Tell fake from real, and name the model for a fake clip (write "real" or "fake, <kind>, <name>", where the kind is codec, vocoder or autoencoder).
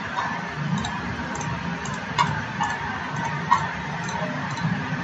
real